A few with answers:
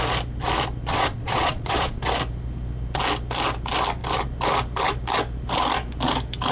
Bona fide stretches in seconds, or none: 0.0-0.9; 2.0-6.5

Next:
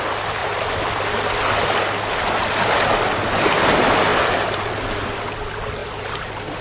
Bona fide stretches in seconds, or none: 0.0-0.4; 1.0-4.1; 5.1-5.8

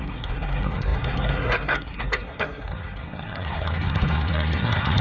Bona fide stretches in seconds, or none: none

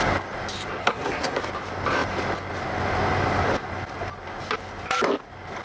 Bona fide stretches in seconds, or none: 0.0-0.8; 1.4-5.6

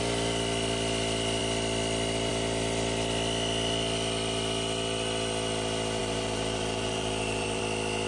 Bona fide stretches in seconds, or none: 0.0-6.0; 7.6-8.1

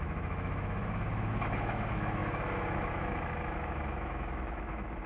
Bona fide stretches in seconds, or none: none

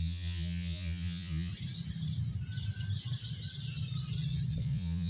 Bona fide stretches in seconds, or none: 1.5-4.6